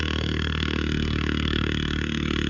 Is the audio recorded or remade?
remade